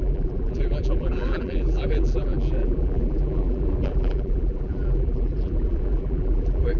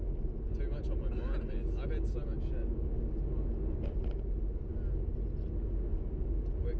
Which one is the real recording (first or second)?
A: second